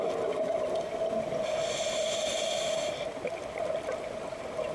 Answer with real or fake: real